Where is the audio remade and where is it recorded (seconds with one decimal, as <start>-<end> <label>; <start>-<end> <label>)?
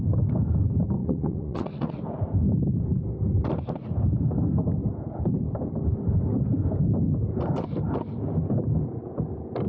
0.0-1.0 recorded; 1.0-1.9 remade; 1.9-9.7 recorded